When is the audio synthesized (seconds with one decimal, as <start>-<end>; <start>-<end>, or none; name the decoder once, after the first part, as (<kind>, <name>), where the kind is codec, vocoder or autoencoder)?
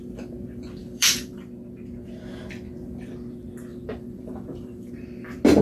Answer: 0.8-1.4 (vocoder, BigVGAN v2); 3.7-4.9